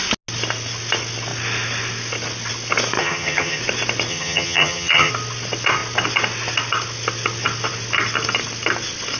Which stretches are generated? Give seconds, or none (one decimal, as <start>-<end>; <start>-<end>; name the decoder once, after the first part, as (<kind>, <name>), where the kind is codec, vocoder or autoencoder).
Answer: 3.0-3.6 (vocoder, HiFi-GAN); 4.1-5.1